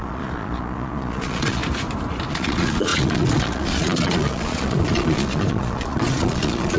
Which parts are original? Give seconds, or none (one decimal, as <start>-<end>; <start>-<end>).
1.6-2.3